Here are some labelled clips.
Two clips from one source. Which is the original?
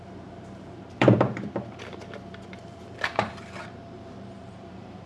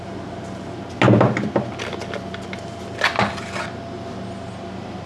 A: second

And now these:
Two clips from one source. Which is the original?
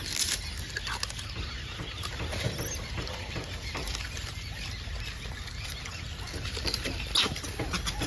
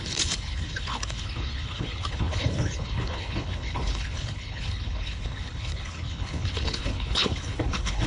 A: first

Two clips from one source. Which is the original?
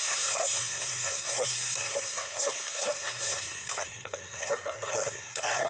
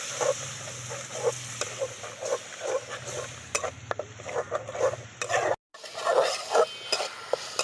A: second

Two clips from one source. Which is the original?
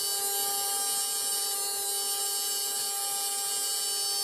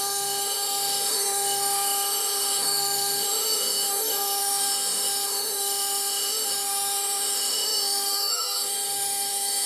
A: first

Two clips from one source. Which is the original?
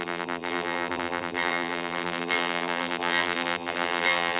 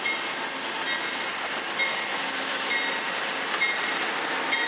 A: second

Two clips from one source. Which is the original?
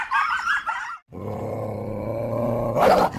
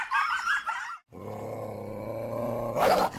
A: second